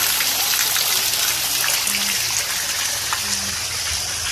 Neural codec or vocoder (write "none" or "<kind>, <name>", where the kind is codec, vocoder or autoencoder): none